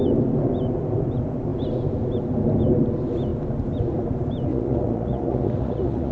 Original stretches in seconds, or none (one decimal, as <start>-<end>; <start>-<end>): 0.0-4.5